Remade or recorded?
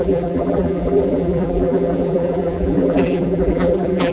remade